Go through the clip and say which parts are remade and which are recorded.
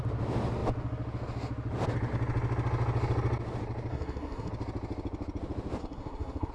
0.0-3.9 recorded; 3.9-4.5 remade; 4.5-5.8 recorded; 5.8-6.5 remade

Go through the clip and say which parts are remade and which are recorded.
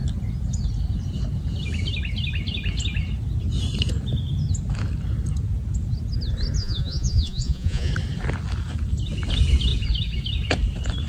0.0-6.6 recorded; 6.6-7.9 remade; 7.9-11.1 recorded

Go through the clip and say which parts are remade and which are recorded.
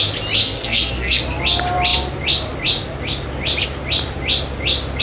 0.0-0.4 recorded; 0.4-1.2 remade; 1.2-5.0 recorded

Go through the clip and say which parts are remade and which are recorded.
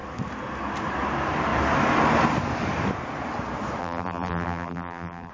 0.0-3.8 recorded; 3.8-5.3 remade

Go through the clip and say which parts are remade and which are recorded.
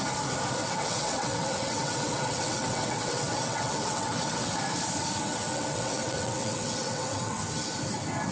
0.0-0.6 recorded; 0.6-4.6 remade; 4.6-5.3 recorded; 5.3-7.4 remade; 7.4-8.3 recorded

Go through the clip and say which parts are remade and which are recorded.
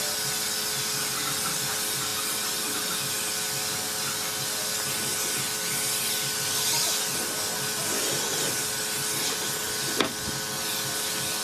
0.0-11.4 recorded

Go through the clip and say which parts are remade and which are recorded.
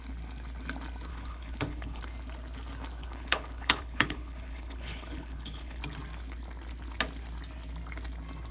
0.0-1.1 recorded; 1.1-2.0 remade; 2.0-3.0 recorded; 3.0-5.8 remade; 5.8-8.5 recorded